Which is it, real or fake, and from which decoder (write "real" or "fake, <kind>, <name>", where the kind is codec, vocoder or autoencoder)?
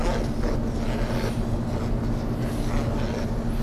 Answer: real